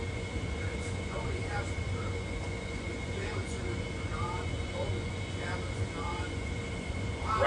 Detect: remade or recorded remade